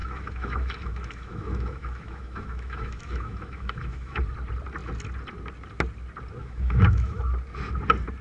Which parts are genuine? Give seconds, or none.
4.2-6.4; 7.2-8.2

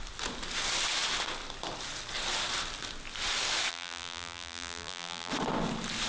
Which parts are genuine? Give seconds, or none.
0.0-3.7; 5.3-6.1